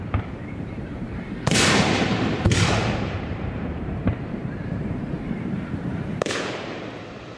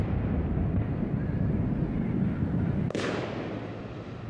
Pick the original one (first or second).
second